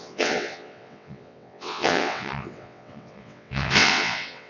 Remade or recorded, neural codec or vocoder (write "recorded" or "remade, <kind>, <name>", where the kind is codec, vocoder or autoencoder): remade, vocoder, WaveNeXt